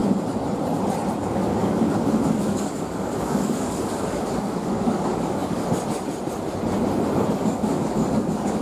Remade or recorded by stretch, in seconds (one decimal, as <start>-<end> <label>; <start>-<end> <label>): 0.0-1.2 recorded; 1.2-5.6 remade; 5.6-7.3 recorded; 7.3-8.6 remade